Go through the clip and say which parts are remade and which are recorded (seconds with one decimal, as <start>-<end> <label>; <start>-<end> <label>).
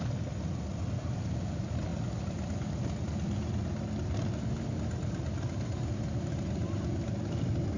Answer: 0.0-7.8 recorded